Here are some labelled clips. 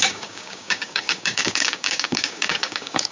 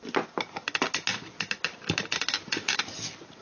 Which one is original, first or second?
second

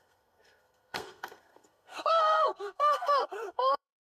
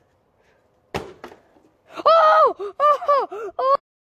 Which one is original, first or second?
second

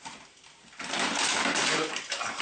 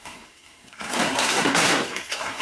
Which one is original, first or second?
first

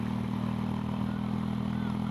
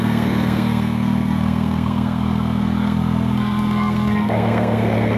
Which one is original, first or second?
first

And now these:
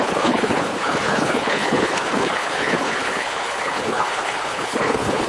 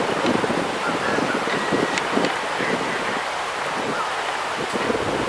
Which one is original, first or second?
second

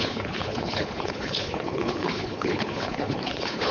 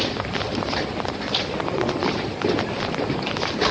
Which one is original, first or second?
second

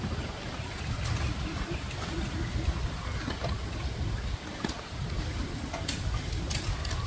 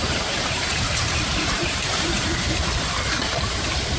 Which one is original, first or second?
first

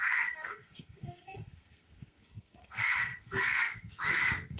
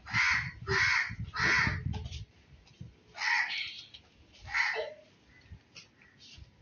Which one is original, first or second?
second